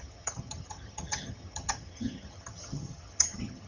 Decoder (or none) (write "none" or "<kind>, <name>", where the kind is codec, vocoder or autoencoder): vocoder, HiFi-GAN